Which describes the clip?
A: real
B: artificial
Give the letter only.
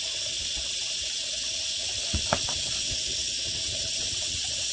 B